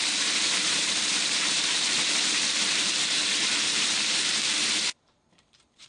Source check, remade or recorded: remade